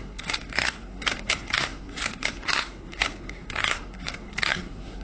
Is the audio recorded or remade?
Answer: remade